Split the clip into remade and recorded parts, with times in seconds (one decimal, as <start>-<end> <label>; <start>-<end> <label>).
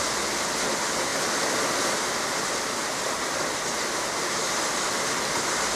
0.0-5.8 recorded